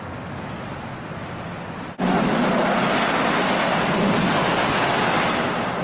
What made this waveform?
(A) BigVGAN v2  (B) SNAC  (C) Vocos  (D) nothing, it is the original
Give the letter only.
D